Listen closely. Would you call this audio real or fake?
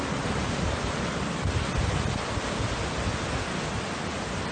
real